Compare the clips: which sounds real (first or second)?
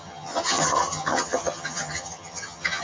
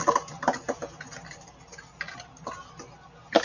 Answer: second